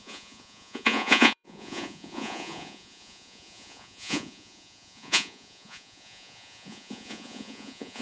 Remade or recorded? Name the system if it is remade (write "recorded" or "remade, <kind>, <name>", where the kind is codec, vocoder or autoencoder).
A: remade, vocoder, Vocos